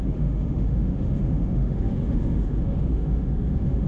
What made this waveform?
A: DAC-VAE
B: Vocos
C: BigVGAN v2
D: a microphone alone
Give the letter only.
A